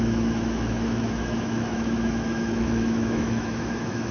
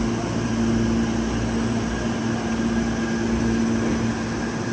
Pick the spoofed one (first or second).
first